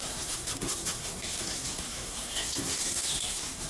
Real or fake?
fake